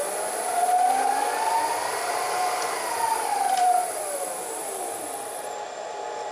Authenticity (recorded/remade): remade